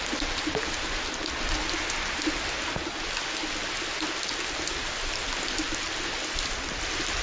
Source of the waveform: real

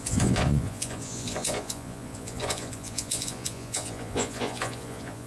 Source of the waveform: fake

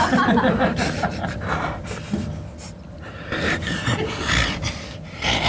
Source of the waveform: fake